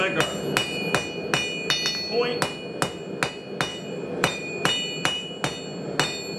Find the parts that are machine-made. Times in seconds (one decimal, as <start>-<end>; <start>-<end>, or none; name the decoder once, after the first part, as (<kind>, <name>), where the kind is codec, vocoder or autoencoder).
3.7-5.3 (vocoder, BigVGAN v2)